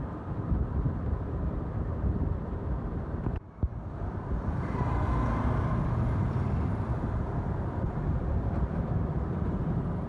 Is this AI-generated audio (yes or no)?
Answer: yes